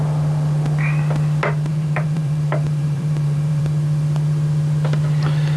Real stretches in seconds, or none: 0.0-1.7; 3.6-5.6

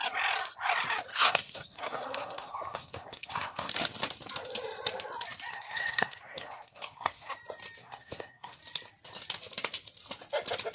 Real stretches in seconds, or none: 0.0-1.1; 3.7-5.5; 7.3-7.8; 8.6-10.7

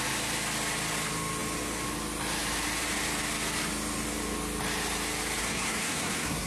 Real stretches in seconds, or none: 0.0-5.4

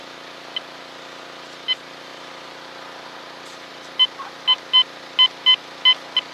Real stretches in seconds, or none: 0.0-6.3

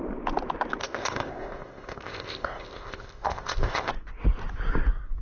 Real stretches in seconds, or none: 0.0-0.8; 3.9-5.2

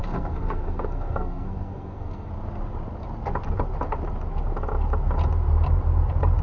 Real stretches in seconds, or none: 2.3-6.4

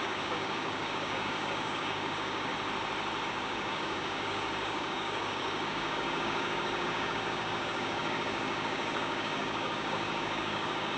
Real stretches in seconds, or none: 2.5-3.3

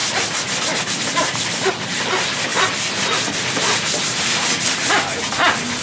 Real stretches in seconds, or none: 0.0-2.5